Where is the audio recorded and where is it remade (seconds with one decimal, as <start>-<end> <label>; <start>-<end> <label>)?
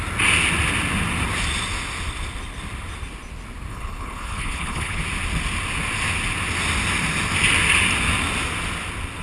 0.0-3.7 recorded; 3.7-5.0 remade; 5.0-9.2 recorded